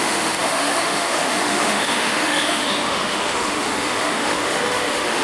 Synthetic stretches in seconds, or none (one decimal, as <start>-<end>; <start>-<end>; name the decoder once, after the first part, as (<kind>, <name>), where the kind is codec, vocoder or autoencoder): 0.0-5.2 (autoencoder, DAC-VAE)